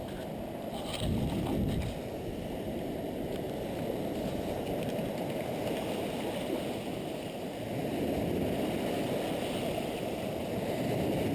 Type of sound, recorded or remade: recorded